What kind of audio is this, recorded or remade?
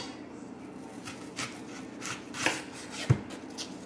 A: recorded